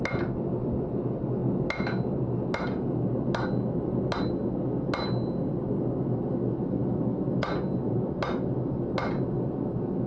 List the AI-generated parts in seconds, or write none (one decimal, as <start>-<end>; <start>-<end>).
none